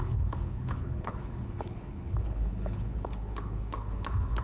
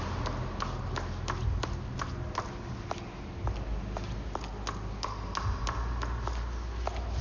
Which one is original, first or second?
second